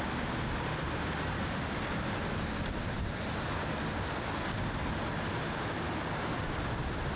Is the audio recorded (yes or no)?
yes